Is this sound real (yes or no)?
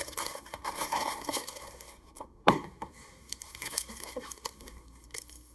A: no